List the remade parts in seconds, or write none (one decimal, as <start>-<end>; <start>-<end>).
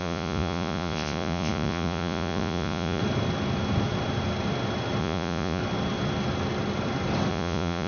0.0-3.0; 5.0-5.6; 7.3-7.9